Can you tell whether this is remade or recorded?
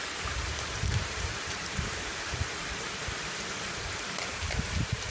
remade